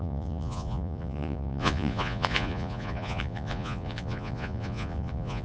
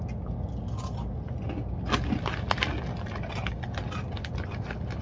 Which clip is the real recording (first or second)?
second